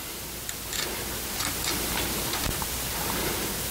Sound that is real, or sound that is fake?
real